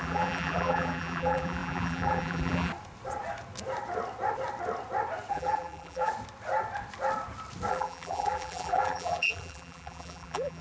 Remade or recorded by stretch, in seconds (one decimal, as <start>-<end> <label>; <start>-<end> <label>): 0.0-2.7 remade; 2.7-5.3 recorded; 5.3-6.1 remade; 6.1-7.7 recorded; 7.7-10.6 remade